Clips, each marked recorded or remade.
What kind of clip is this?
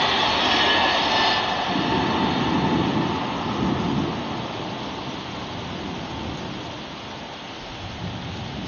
recorded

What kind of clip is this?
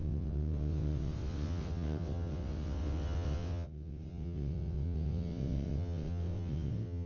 remade